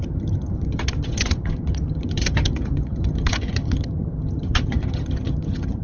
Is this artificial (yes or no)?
yes